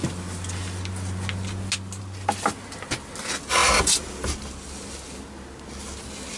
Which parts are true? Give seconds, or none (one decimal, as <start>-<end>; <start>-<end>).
0.0-6.4